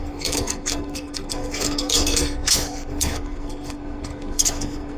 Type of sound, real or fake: fake